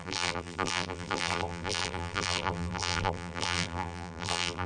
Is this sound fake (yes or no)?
yes